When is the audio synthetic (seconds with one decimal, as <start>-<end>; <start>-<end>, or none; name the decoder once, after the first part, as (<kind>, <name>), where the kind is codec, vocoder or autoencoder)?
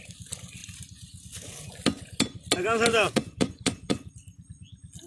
2.9-4.1 (vocoder, Vocos)